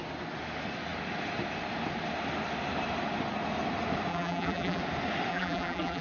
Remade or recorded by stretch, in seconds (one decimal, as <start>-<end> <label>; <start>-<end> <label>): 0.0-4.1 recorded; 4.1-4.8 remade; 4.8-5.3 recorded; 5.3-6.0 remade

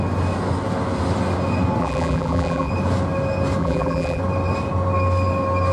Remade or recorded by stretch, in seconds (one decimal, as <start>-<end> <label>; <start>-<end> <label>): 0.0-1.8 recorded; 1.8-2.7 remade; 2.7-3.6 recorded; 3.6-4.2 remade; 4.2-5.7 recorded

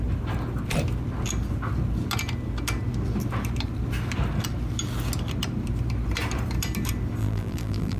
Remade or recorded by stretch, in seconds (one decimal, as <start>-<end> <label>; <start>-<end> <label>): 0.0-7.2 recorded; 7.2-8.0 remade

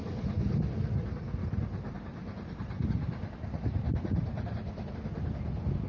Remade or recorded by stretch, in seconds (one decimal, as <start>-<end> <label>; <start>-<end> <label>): 0.0-1.4 recorded; 1.4-4.9 remade; 4.9-5.9 recorded

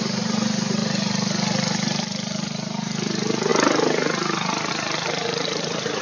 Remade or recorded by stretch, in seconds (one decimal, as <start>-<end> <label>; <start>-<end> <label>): 0.0-0.8 remade; 0.8-2.8 recorded; 2.8-3.5 remade; 3.5-4.7 recorded; 4.7-6.0 remade

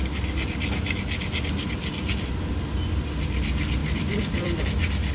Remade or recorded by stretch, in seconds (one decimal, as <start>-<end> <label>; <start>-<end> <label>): 0.0-3.8 recorded; 3.8-4.6 remade; 4.6-5.1 recorded